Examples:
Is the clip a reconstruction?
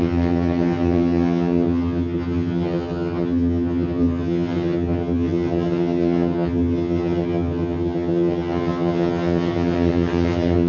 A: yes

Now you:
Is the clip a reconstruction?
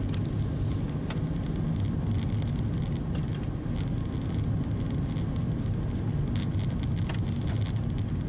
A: no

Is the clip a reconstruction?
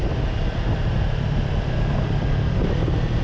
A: yes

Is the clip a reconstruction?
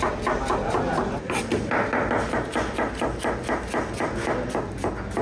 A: no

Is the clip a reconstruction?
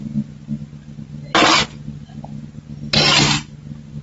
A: no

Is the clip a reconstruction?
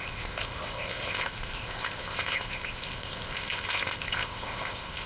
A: yes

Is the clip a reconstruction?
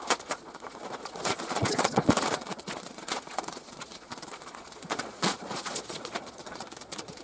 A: yes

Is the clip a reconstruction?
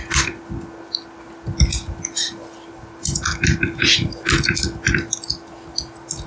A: no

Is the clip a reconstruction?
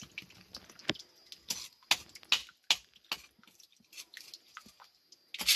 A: no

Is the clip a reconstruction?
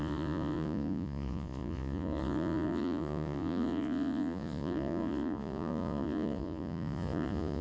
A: yes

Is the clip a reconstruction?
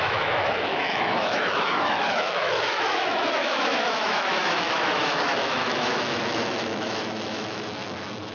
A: yes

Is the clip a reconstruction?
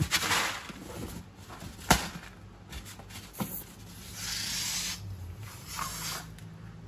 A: no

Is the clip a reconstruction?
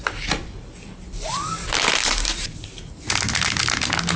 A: no